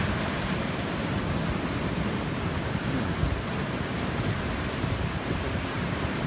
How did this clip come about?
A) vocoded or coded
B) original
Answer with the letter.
A